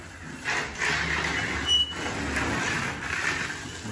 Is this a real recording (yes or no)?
yes